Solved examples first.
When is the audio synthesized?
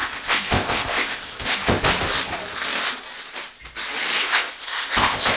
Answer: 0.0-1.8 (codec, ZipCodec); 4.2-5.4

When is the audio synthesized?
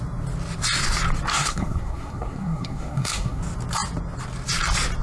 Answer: 1.3-3.4 (codec, SNAC)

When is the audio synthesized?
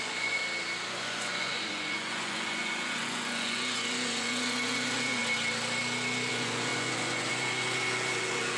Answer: 0.0-0.4 (vocoder, Vocos); 0.9-5.2; 6.3-8.6